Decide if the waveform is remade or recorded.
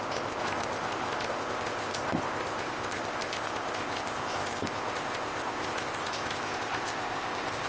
remade